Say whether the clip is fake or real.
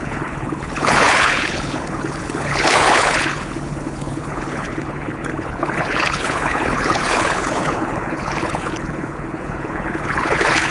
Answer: fake